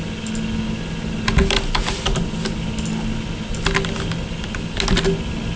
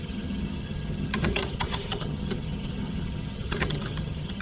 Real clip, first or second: first